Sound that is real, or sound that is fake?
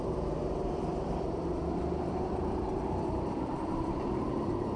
fake